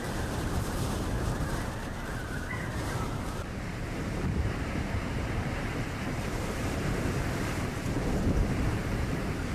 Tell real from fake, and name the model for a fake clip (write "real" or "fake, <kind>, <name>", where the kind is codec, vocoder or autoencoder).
fake, vocoder, BigVGAN v2